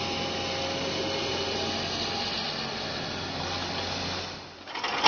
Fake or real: real